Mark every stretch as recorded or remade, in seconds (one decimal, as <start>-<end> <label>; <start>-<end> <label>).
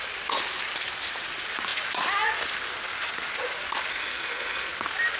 0.0-3.9 recorded; 3.9-4.7 remade; 4.7-5.2 recorded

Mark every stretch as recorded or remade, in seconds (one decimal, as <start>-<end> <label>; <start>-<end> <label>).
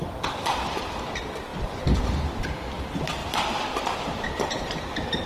0.0-5.3 remade